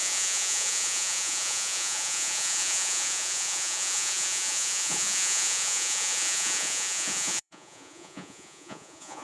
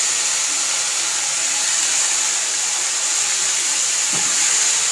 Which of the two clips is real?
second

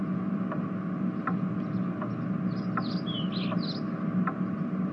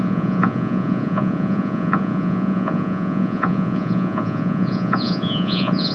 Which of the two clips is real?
first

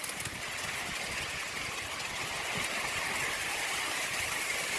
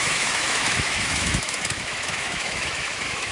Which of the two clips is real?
first